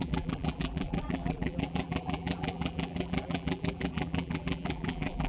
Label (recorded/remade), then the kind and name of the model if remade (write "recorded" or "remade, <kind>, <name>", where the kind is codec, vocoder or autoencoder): remade, vocoder, BigVGAN v2